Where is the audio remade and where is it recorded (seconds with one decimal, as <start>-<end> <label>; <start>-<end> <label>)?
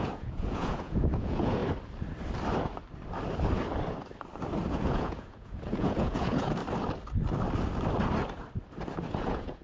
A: 0.0-1.6 remade; 1.6-4.7 recorded; 4.7-6.6 remade; 6.6-9.2 recorded; 9.2-9.6 remade